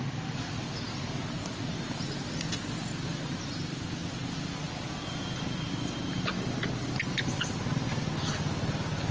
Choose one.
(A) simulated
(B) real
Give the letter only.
B